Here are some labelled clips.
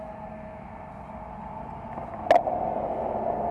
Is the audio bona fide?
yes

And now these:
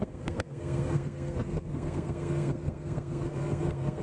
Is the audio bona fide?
no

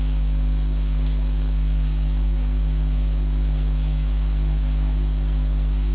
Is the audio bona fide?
no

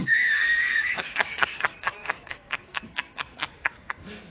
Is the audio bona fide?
no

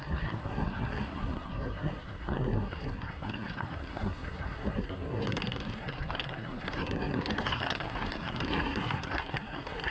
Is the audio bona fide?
no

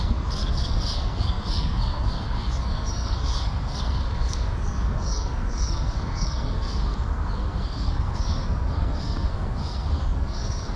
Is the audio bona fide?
no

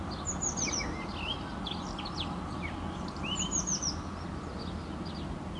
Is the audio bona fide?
yes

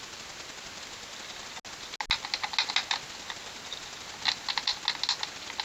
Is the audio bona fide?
yes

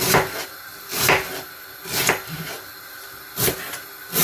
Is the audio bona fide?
yes